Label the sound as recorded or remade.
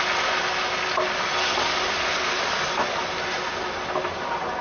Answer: recorded